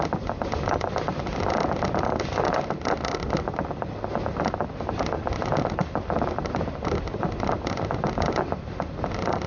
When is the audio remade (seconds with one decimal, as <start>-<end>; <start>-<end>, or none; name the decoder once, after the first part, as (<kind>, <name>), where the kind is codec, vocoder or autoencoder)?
none